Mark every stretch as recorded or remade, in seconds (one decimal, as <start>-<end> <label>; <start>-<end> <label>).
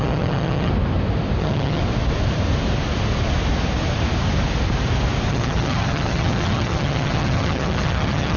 0.0-0.7 remade; 0.7-1.4 recorded; 1.4-1.8 remade; 1.8-5.3 recorded; 5.3-8.4 remade